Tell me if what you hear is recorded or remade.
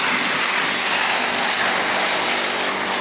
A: recorded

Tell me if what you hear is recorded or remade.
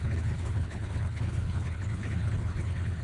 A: remade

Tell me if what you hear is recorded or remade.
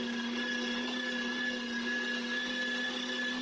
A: recorded